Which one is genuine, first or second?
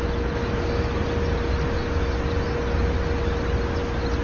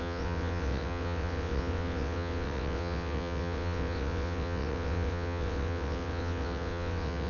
first